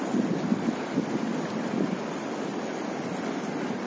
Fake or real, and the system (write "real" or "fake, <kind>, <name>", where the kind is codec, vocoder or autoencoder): real